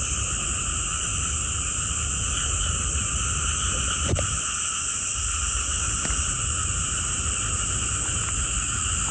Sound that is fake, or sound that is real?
real